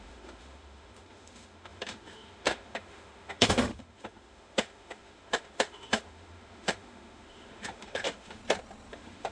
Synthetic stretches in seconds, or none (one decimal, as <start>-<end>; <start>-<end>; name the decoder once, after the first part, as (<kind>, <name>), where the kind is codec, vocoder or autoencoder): 0.0-8.4 (autoencoder, DAC-VAE); 8.9-9.3